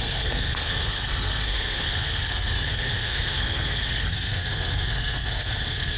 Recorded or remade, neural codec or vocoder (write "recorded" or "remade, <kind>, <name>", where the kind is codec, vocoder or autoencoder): remade, codec, SNAC